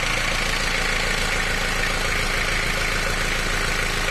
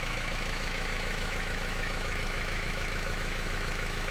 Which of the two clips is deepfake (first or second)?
second